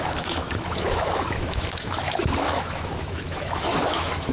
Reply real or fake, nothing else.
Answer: fake